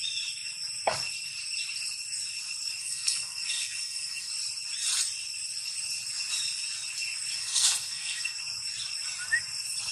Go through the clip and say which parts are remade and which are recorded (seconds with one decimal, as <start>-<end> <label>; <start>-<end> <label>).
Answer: 0.0-2.8 recorded; 2.8-4.3 remade; 4.3-7.4 recorded; 7.4-8.4 remade; 8.4-9.9 recorded